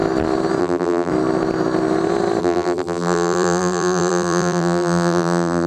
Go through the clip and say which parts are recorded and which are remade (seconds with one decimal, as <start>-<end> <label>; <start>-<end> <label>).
0.0-0.6 recorded; 0.6-1.1 remade; 1.1-2.4 recorded; 2.4-5.7 remade